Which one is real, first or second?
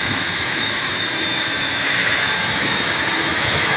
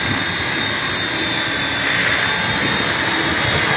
second